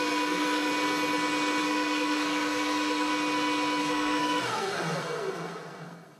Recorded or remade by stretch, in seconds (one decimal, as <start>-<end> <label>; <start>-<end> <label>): 0.0-0.7 remade; 0.7-1.6 recorded; 1.6-3.1 remade; 3.1-3.8 recorded; 3.8-6.2 remade